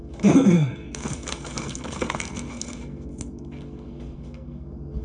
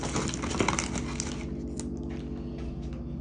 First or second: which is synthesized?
first